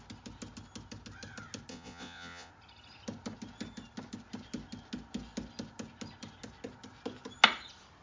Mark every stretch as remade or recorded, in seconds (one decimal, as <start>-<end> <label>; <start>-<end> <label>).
0.0-1.7 recorded; 1.7-2.5 remade; 2.5-8.0 recorded